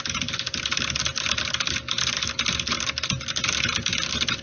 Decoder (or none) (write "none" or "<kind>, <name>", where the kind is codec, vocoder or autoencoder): none